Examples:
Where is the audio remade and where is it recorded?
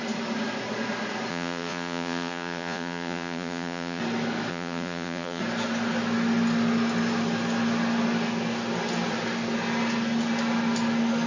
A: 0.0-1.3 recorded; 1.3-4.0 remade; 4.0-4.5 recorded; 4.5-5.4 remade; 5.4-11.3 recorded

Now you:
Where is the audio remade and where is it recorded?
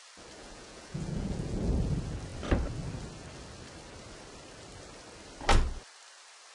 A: 0.0-0.4 recorded; 0.4-1.7 remade; 1.7-6.5 recorded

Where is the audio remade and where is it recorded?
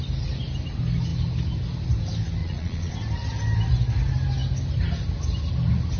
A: 0.0-2.4 recorded; 2.4-2.9 remade; 2.9-6.0 recorded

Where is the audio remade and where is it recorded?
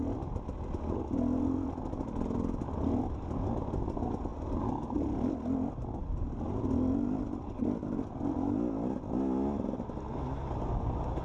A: 0.0-11.2 recorded